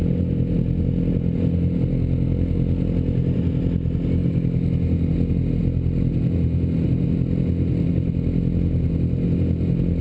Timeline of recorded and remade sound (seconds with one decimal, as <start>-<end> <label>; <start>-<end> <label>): 0.0-10.0 recorded